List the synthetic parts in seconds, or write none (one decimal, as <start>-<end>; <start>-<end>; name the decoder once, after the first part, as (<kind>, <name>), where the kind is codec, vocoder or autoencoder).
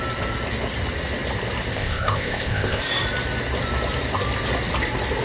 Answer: 1.7-2.8 (codec, ZipCodec)